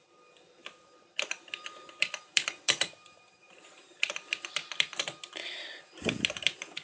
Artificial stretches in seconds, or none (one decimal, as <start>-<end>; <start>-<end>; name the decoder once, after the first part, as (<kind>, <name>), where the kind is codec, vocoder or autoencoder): 0.6-4.7 (vocoder, BigVGAN v2)

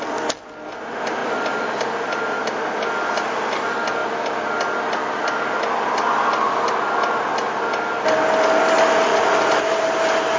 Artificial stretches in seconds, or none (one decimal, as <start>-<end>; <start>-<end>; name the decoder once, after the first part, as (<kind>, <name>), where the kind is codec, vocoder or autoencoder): none

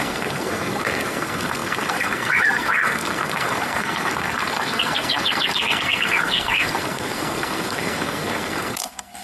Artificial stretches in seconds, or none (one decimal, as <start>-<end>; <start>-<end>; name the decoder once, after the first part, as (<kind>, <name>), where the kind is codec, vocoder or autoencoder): 0.0-9.2 (codec, SNAC)

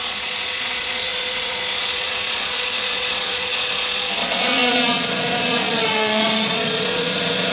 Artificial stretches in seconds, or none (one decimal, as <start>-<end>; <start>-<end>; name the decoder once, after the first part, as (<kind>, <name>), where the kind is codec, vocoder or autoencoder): 0.0-7.5 (vocoder, Vocos)

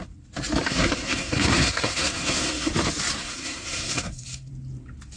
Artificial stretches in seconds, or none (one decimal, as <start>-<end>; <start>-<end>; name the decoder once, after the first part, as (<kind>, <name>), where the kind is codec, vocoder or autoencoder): 0.7-2.7 (codec, SNAC); 3.2-4.5

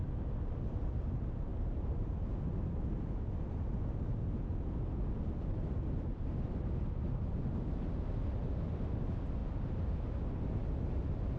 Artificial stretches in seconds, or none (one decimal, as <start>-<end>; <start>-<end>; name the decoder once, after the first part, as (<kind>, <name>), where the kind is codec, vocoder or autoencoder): none

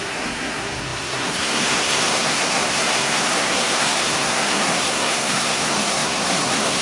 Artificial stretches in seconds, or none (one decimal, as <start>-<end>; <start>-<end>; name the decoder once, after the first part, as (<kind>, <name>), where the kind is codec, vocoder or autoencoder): 0.0-6.8 (codec, SNAC)